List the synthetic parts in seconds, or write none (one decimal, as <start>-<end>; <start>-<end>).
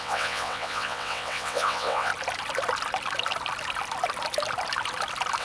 0.0-2.1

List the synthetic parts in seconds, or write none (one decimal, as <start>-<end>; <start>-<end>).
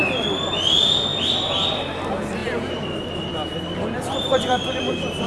1.1-1.7; 2.4-5.3